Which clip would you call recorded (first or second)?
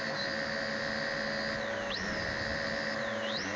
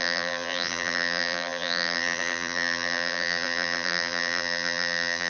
first